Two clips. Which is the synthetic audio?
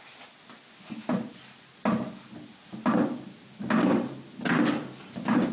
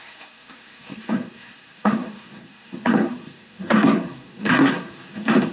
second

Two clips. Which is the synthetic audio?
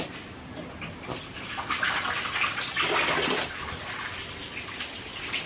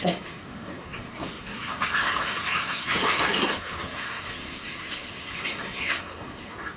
second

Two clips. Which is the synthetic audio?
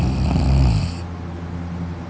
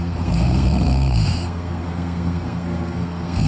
second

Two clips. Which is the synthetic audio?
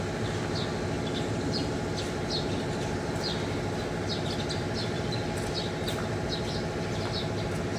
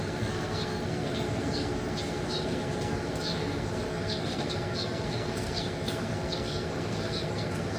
second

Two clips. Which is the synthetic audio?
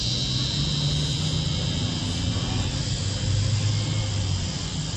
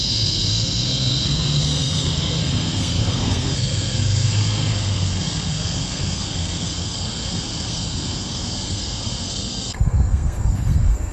second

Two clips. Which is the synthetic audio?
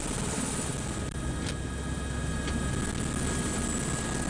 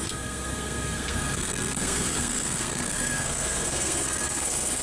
second